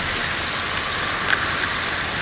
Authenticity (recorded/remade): recorded